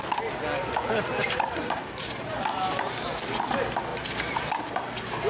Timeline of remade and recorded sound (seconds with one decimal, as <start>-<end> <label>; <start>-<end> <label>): 0.0-3.9 recorded; 3.9-4.6 remade; 4.6-5.3 recorded